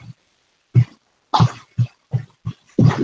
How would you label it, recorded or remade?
recorded